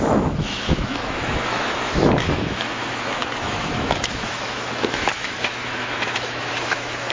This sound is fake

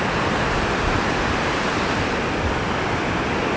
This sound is real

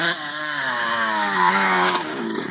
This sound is fake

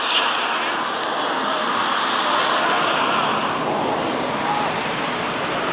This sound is real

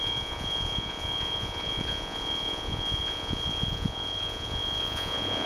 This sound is fake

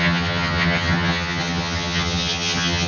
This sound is fake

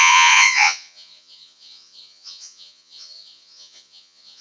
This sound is fake